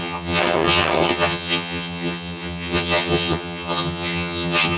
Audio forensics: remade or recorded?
remade